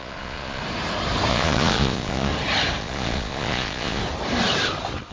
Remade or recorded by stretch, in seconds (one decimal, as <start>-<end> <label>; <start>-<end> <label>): 0.0-0.6 remade; 0.6-1.3 recorded; 1.3-2.3 remade; 2.3-2.8 recorded; 2.8-4.0 remade; 4.0-5.1 recorded